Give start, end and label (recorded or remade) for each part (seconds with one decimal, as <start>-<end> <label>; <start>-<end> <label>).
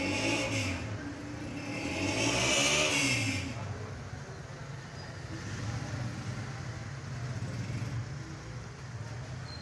0.0-9.6 recorded